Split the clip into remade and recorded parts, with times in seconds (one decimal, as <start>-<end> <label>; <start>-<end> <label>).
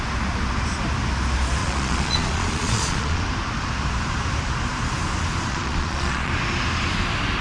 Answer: 0.0-1.6 recorded; 1.6-3.2 remade; 3.2-5.5 recorded; 5.5-6.3 remade; 6.3-7.4 recorded